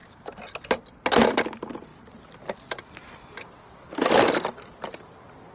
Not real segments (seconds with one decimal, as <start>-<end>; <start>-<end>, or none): none